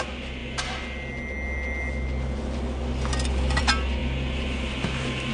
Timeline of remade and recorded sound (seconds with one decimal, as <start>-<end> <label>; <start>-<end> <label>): 0.0-5.3 recorded